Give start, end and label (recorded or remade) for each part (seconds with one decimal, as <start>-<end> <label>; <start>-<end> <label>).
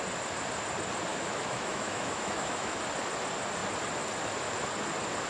0.0-1.1 recorded; 1.1-2.8 remade; 2.8-5.3 recorded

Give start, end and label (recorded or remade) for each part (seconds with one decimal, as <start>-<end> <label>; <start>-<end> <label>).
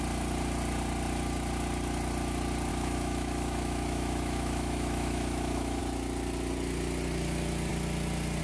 0.0-2.7 recorded; 2.7-5.8 remade; 5.8-8.4 recorded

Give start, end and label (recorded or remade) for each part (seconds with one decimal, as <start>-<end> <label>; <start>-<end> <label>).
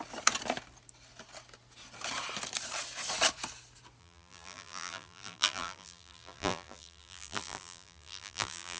0.0-4.0 recorded; 4.0-8.8 remade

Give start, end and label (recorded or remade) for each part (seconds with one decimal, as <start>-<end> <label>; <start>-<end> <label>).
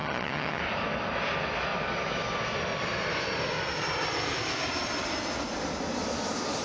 0.0-0.6 remade; 0.6-6.6 recorded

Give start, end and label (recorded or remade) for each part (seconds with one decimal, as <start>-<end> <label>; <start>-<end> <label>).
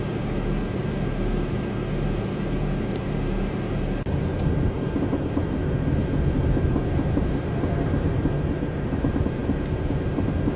0.0-10.6 recorded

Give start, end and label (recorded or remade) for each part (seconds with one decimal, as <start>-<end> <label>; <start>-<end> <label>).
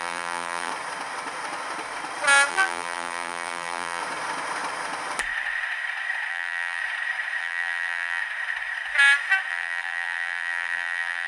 0.0-0.7 remade; 0.7-2.5 recorded; 2.5-4.0 remade; 4.0-6.3 recorded; 6.3-6.8 remade; 6.8-7.4 recorded; 7.4-8.2 remade; 8.2-9.5 recorded; 9.5-11.3 remade